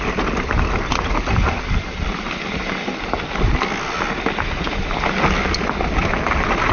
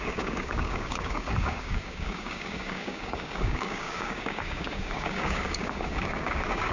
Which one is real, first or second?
first